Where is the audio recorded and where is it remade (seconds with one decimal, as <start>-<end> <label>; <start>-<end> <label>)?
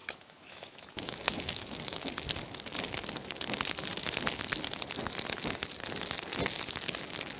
0.0-2.1 remade; 2.1-7.4 recorded